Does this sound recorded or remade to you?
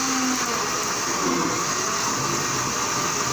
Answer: recorded